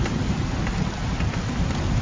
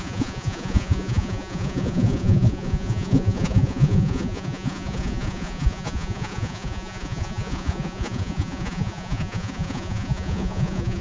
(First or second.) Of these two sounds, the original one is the first